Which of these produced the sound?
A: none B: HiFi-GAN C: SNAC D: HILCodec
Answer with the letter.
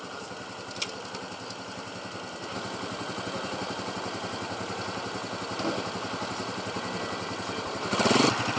A